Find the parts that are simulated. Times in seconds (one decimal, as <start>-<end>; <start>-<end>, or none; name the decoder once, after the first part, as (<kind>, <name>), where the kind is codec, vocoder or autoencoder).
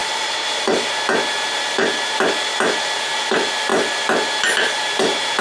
none